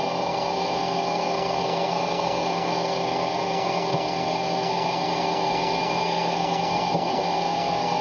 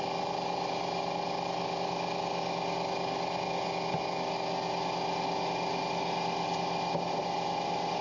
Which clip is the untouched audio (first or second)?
second